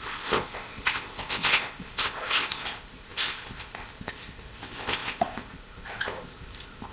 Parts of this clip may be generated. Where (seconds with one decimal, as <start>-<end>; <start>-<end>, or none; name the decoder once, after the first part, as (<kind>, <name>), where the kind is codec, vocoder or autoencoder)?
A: 0.0-6.9 (codec, ZipCodec)